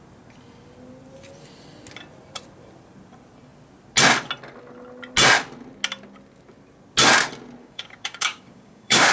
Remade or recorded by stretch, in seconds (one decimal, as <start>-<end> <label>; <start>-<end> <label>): 0.0-7.6 recorded; 7.6-9.1 remade